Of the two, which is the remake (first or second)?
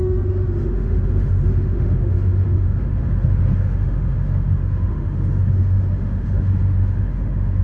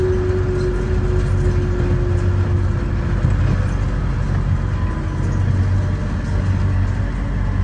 first